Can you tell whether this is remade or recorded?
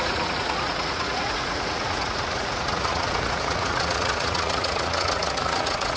remade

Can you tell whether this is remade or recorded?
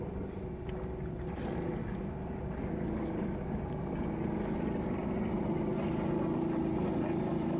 recorded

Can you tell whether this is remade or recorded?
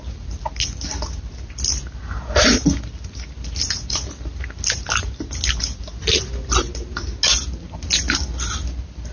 recorded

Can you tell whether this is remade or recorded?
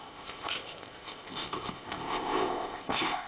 remade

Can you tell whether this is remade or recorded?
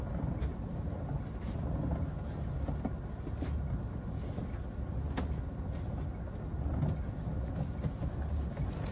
recorded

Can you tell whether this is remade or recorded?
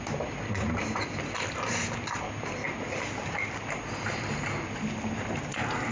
recorded